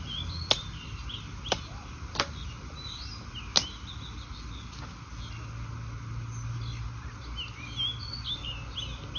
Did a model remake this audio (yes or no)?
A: no